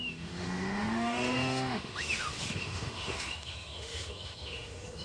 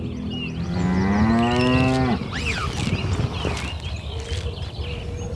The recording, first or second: second